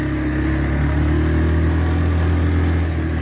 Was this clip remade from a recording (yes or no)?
no